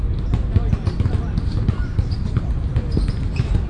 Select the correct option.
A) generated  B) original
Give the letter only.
B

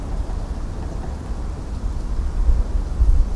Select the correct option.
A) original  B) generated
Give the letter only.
A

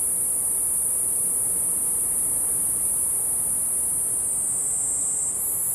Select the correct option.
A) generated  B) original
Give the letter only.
B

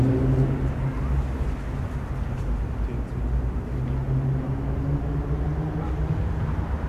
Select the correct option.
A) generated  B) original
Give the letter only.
B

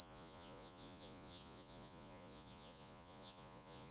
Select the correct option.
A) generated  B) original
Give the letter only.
A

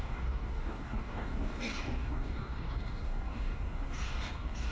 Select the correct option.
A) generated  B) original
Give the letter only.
A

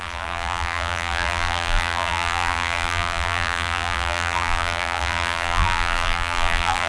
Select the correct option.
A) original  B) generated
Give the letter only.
B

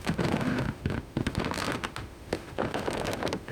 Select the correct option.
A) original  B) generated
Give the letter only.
B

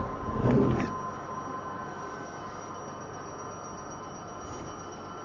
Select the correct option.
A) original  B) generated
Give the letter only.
A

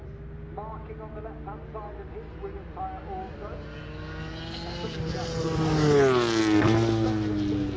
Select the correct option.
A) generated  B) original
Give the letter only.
B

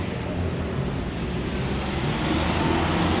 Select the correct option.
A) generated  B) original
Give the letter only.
B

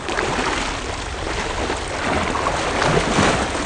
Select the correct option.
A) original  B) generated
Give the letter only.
A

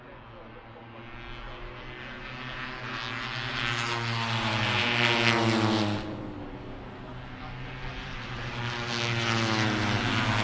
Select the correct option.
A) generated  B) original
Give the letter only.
B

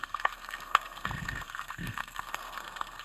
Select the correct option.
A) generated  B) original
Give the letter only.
A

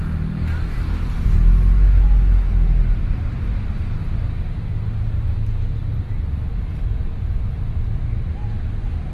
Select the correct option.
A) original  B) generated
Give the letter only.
A